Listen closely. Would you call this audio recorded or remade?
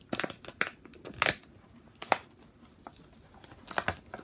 recorded